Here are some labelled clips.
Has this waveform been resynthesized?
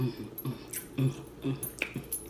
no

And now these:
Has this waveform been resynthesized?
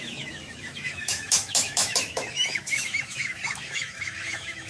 yes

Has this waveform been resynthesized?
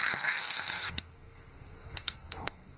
yes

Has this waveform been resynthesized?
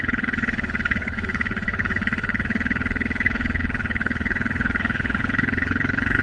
yes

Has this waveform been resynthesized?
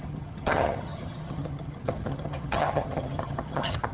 yes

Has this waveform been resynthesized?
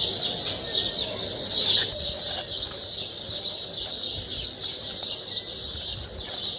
no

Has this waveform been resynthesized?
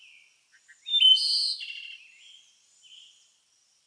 no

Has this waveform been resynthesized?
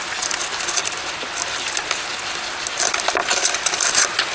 no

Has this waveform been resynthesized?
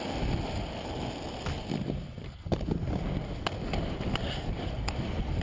no